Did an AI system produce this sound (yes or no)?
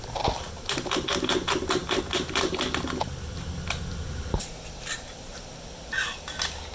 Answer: no